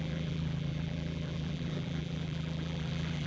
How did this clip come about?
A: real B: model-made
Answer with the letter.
B